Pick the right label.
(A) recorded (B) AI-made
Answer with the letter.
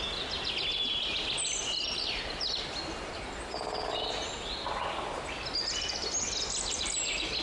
A